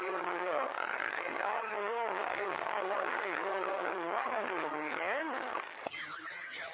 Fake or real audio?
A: fake